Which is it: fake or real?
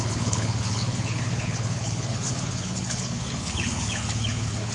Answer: fake